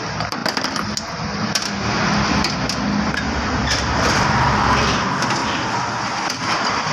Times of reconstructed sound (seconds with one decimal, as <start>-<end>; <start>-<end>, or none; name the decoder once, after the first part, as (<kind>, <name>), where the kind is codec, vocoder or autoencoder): 0.0-0.4 (vocoder, BigVGAN v2); 3.0-5.4; 6.3-6.9

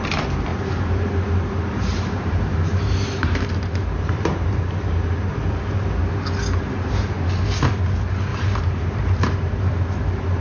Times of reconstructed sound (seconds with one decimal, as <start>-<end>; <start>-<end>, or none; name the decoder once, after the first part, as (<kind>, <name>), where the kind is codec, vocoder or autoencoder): 0.5-4.8 (vocoder, BigVGAN v2); 8.3-9.5

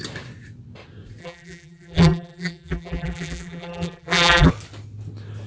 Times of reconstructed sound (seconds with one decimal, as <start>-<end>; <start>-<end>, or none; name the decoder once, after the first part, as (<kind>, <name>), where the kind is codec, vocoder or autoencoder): 1.2-4.5 (vocoder, BigVGAN v2)

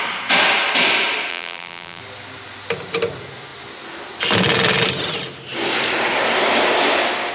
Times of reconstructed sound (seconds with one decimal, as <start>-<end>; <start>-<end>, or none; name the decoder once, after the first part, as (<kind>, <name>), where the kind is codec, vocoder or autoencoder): 1.3-2.0 (vocoder, BigVGAN v2)

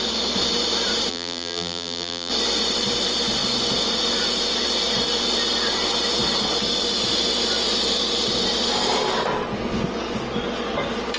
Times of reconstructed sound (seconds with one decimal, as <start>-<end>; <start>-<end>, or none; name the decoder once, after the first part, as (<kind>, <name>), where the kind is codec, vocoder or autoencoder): 1.1-2.3 (vocoder, BigVGAN v2)